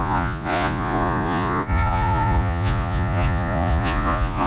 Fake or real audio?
fake